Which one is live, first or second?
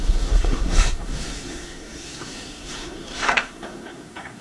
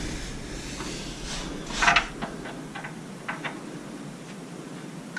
second